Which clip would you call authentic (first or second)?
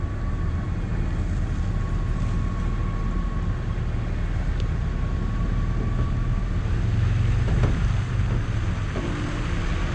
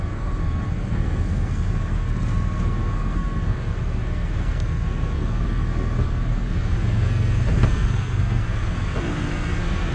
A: first